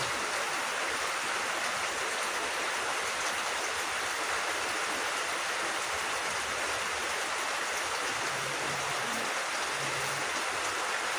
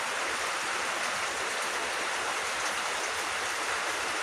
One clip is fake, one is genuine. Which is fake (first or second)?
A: first